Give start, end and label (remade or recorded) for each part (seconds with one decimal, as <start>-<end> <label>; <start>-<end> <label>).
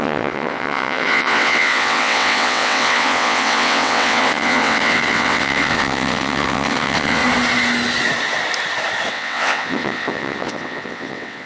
0.0-7.2 remade; 7.2-9.1 recorded; 9.1-11.5 remade